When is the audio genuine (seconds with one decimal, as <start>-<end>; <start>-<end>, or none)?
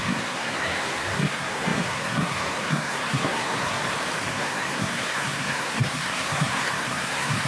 3.8-4.3